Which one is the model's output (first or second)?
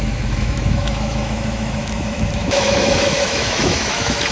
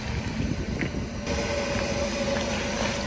first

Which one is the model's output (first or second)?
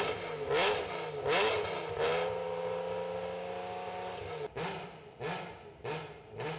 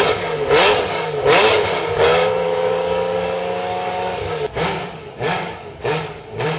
second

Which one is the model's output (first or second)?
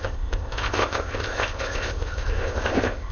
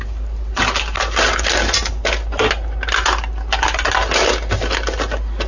first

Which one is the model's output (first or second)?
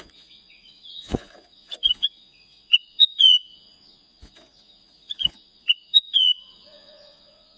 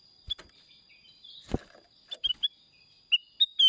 first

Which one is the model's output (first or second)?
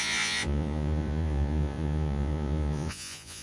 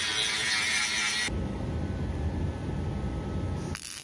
first